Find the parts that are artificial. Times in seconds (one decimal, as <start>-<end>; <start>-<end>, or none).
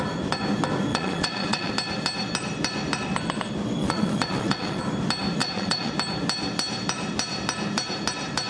0.9-1.7; 3.8-4.8; 5.4-5.9